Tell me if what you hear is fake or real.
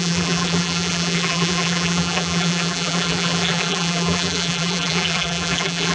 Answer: fake